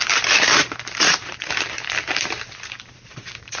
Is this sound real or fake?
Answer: fake